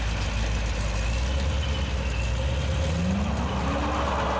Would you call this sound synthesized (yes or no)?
no